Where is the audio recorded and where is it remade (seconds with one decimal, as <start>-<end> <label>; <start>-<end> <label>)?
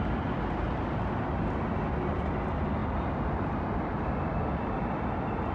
0.0-5.5 recorded